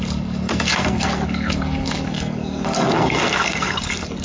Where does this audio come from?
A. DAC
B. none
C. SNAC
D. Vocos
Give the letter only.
C